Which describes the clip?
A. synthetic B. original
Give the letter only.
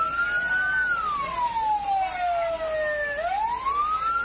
B